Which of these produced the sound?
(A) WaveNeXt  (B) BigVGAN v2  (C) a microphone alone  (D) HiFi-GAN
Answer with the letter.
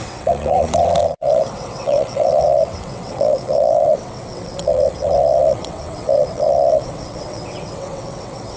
A